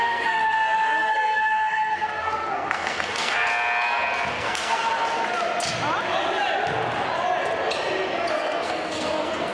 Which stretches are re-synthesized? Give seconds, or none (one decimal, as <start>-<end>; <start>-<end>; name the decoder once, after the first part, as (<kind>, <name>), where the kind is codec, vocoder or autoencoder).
0.0-3.5 (codec, SNAC); 4.3-4.8; 8.3-9.5